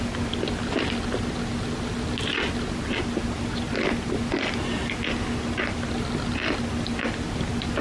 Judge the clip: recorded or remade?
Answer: recorded